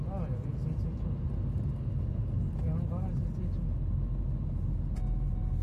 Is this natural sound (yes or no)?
yes